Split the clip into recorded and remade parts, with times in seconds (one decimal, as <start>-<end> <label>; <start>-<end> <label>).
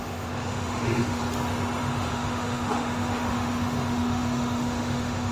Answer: 0.0-1.2 remade; 1.2-1.8 recorded; 1.8-5.3 remade